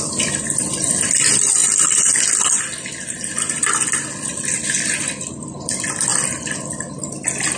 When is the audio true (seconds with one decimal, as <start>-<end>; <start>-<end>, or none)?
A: 0.0-7.6